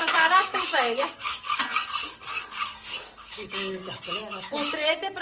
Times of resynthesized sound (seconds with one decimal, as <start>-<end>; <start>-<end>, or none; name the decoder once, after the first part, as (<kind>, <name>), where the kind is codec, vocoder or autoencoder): 0.0-1.6 (codec, DAC); 3.0-3.8; 4.4-5.2